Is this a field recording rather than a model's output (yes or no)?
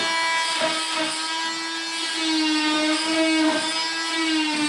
yes